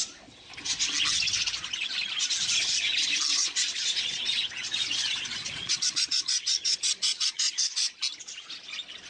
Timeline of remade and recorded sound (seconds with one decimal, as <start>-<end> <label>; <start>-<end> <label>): 0.0-3.3 recorded; 3.3-7.9 remade; 7.9-9.1 recorded